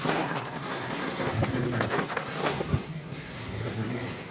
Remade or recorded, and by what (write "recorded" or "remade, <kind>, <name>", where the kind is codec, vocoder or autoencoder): remade, codec, SNAC